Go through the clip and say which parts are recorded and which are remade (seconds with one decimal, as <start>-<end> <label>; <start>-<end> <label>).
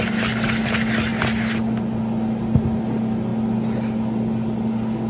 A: 0.0-5.1 recorded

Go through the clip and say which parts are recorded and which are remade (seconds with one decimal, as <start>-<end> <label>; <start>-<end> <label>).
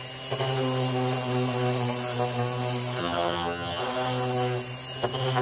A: 0.0-3.0 recorded; 3.0-3.8 remade; 3.8-5.4 recorded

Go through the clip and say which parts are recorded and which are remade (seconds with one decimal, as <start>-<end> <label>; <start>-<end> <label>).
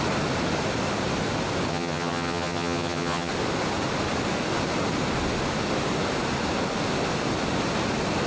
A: 0.0-1.7 recorded; 1.7-3.3 remade; 3.3-8.3 recorded